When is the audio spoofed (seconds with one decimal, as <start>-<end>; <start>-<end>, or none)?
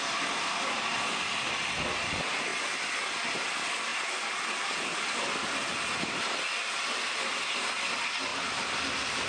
8.3-8.8